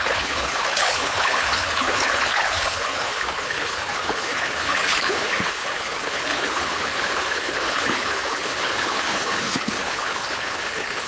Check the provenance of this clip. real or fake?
fake